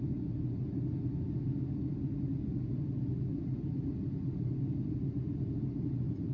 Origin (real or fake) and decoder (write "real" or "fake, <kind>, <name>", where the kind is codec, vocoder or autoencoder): real